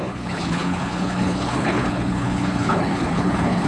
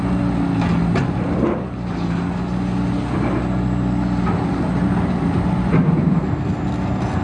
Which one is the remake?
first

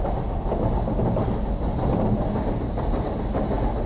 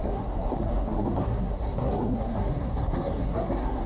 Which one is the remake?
second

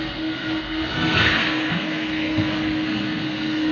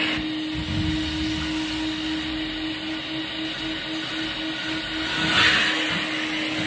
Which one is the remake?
first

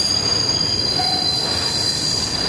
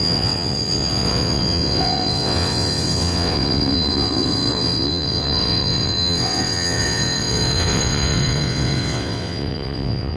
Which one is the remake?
second